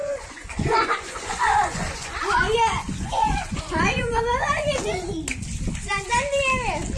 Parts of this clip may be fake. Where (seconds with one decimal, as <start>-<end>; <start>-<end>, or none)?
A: 0.0-4.2